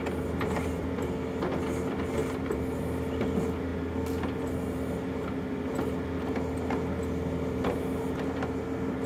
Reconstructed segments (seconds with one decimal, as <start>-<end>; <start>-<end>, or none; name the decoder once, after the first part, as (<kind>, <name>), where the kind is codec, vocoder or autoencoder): none